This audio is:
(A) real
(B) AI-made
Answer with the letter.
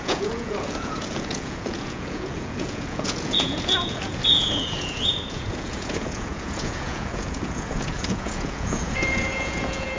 B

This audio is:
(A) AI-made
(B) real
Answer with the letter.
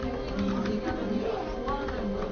B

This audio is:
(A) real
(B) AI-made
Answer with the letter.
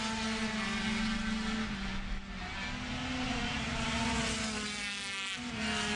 A